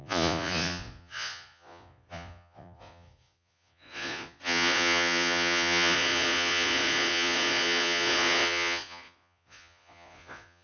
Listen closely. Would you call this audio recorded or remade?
remade